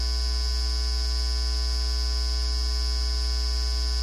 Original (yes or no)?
yes